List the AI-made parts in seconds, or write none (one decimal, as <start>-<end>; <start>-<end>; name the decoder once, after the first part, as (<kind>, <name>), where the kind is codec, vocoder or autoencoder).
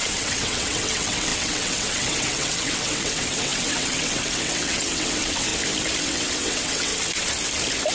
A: 0.0-5.5 (vocoder, WaveNeXt); 6.0-6.9